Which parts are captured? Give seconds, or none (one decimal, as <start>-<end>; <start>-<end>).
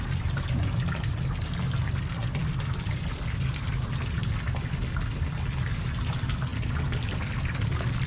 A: 0.0-8.1